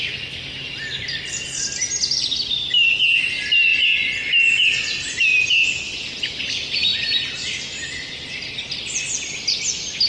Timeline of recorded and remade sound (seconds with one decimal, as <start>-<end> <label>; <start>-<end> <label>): 0.0-10.1 recorded